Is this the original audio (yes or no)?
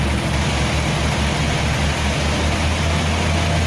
yes